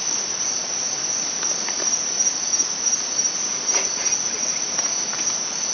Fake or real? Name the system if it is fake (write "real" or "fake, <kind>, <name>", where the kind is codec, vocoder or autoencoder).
real